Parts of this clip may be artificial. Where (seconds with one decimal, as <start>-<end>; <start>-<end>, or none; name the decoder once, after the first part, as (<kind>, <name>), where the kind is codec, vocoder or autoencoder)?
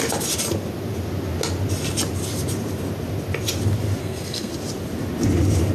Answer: 4.0-4.5 (codec, SNAC)